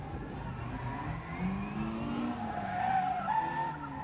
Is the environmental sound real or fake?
real